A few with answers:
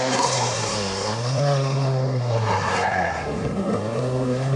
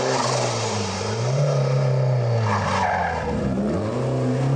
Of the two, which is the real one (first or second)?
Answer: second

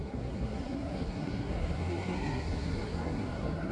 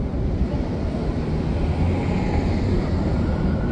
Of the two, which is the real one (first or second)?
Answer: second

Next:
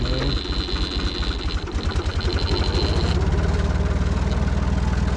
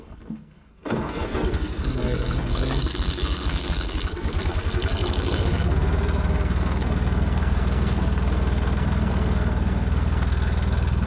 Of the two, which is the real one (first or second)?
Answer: first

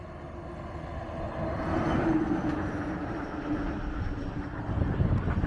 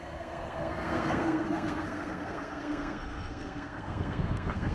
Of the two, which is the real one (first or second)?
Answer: first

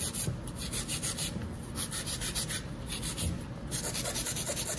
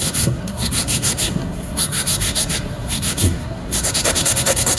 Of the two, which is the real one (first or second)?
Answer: first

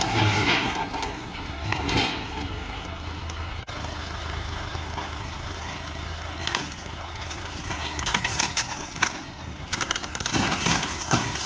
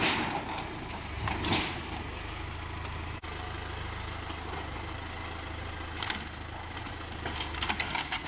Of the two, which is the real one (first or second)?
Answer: second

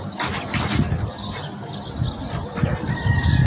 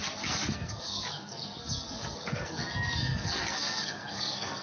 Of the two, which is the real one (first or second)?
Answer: first